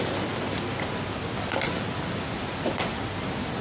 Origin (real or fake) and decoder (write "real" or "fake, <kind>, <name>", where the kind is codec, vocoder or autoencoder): fake, vocoder, BigVGAN v2